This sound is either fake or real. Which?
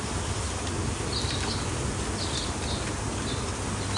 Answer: real